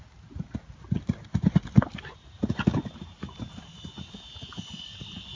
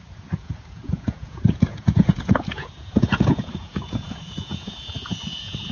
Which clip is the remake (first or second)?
second